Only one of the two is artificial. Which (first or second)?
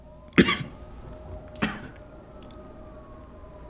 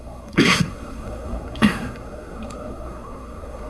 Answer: second